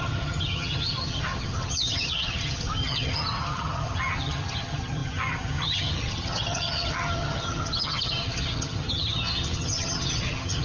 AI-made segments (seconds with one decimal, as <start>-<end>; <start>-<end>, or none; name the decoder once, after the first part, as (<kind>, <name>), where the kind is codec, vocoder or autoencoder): 0.0-10.6 (vocoder, HiFi-GAN)